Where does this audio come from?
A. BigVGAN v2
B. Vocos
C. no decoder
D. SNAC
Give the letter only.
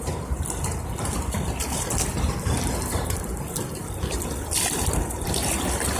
A